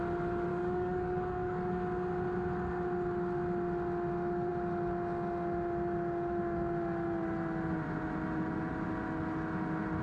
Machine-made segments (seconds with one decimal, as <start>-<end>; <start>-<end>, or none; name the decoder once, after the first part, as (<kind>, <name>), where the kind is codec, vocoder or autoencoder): 0.5-1.7 (codec, DAC)